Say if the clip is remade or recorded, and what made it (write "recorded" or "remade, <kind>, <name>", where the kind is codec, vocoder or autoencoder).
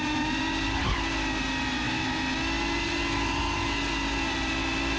recorded